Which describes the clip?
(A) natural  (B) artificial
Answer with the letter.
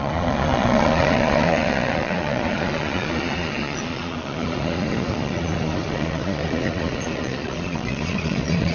B